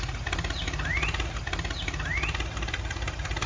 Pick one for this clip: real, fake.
real